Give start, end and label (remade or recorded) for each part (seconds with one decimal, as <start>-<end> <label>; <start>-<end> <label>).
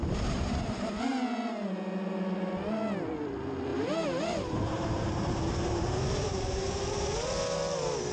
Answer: 0.0-0.9 remade; 0.9-3.7 recorded; 3.7-6.7 remade; 6.7-8.1 recorded